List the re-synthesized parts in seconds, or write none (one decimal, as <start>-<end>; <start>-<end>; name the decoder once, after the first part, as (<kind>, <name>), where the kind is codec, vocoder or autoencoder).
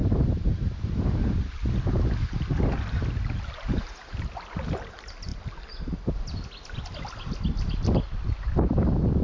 0.0-1.5 (vocoder, BigVGAN v2)